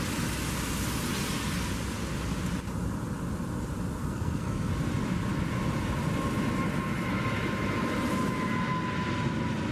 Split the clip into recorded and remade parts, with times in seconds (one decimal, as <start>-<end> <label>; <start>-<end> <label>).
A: 0.0-4.0 recorded; 4.0-4.7 remade; 4.7-9.7 recorded

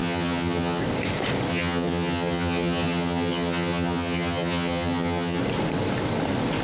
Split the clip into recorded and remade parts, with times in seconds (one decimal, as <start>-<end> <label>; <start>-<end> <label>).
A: 0.0-0.8 remade; 0.8-1.5 recorded; 1.5-5.4 remade; 5.4-6.6 recorded

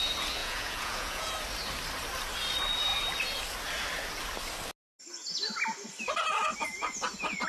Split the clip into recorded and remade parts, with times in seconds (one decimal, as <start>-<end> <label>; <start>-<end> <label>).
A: 0.0-0.4 recorded; 0.4-1.3 remade; 1.3-7.5 recorded

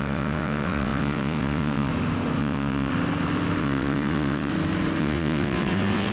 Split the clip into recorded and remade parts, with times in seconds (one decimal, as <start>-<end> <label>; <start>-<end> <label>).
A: 0.0-1.9 remade; 1.9-2.4 recorded; 2.4-2.9 remade; 2.9-3.6 recorded; 3.6-4.5 remade; 4.5-5.0 recorded; 5.0-6.1 remade

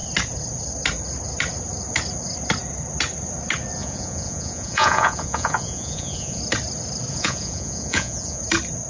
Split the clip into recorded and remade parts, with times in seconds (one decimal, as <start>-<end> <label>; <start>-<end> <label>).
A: 0.0-3.8 recorded; 3.8-6.4 remade; 6.4-7.1 recorded; 7.1-8.4 remade; 8.4-8.9 recorded

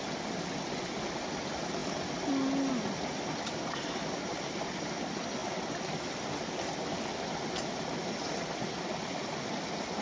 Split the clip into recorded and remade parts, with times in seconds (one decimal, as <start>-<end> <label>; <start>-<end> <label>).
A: 0.0-10.0 recorded

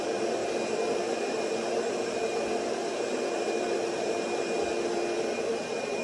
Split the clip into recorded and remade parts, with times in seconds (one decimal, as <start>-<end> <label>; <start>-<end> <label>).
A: 0.0-4.6 remade; 4.6-5.5 recorded; 5.5-6.0 remade

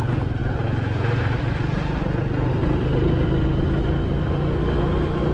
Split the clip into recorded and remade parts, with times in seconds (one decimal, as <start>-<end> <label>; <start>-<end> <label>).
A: 0.0-5.3 recorded